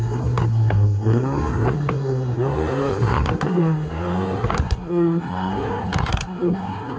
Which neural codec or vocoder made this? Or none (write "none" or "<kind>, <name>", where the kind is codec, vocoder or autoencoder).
codec, SNAC